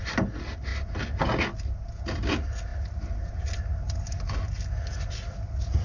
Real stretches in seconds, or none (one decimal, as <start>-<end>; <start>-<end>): 0.0-5.8